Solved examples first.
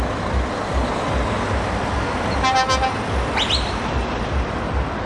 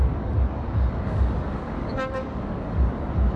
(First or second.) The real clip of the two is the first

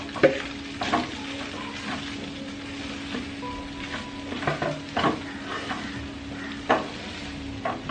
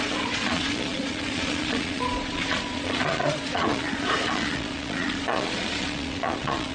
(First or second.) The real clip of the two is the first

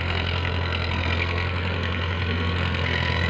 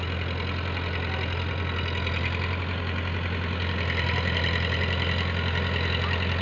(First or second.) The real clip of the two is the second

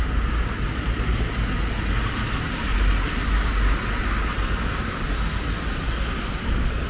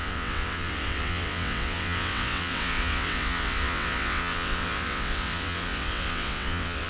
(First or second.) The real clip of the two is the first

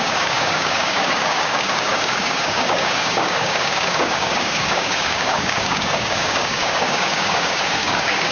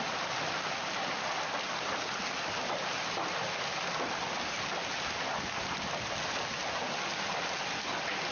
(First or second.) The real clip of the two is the second